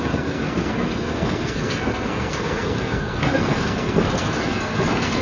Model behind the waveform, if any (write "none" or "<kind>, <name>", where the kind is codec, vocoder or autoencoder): codec, SNAC